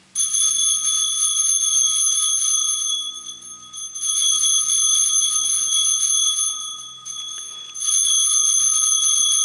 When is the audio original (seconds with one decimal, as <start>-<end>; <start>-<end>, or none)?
0.0-2.6; 3.1-5.9; 7.9-9.4